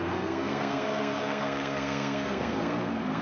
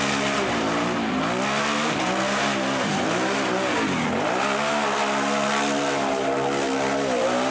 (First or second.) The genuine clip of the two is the second